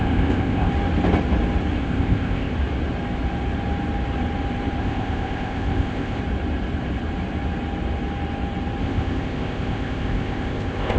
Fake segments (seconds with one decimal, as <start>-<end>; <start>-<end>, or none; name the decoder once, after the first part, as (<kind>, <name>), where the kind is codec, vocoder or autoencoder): 0.0-0.7 (codec, ZipCodec); 1.8-2.5; 4.8-6.2; 8.8-11.0